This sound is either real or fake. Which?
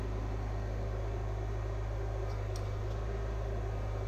real